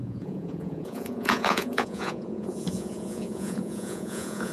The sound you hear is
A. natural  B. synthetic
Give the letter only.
B